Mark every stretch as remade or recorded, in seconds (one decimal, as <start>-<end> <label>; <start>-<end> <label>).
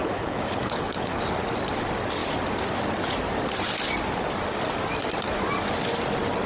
0.0-1.2 remade; 1.2-6.5 recorded